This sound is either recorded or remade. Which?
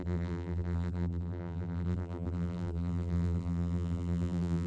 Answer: remade